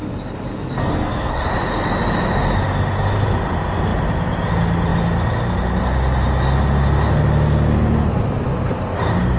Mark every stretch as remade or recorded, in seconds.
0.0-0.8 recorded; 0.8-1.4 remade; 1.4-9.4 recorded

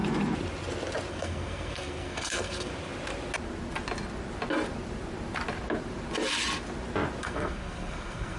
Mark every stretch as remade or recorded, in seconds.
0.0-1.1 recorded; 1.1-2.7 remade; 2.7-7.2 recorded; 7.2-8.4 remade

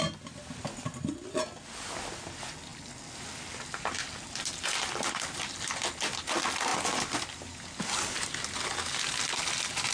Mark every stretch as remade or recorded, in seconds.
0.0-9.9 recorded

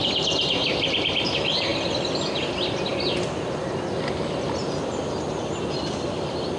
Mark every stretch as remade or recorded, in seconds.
0.0-6.6 recorded

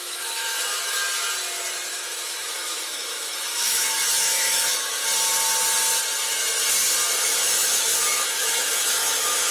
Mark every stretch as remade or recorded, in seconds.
0.0-1.0 remade; 1.0-1.9 recorded; 1.9-5.0 remade; 5.0-7.2 recorded; 7.2-9.5 remade

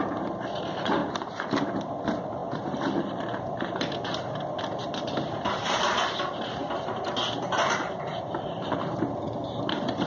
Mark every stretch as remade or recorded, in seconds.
0.0-10.1 remade